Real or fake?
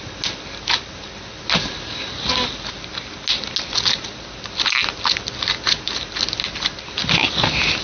real